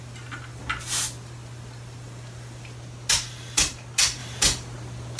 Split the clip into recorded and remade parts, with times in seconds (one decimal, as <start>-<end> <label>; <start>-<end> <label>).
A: 0.0-5.2 recorded